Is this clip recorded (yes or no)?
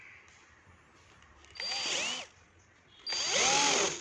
yes